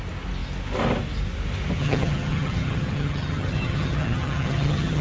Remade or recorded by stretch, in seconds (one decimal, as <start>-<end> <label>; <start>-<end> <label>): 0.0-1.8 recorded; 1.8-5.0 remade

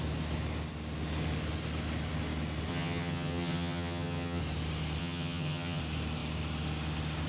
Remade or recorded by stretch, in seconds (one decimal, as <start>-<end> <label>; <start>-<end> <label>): 0.0-2.7 recorded; 2.7-4.4 remade; 4.4-5.0 recorded; 5.0-5.8 remade; 5.8-7.3 recorded

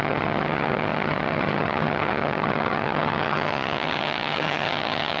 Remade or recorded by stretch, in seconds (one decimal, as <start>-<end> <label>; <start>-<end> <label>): 0.0-5.2 remade